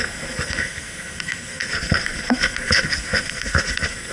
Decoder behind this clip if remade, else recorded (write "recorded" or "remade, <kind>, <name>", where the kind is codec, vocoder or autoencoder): remade, codec, SNAC